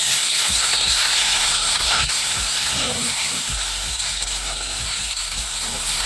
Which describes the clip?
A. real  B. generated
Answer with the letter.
B